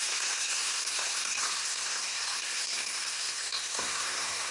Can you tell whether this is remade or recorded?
remade